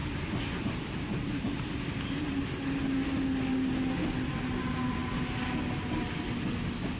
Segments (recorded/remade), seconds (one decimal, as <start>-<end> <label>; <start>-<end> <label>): 0.0-7.0 recorded